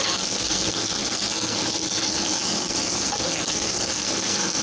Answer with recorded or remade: remade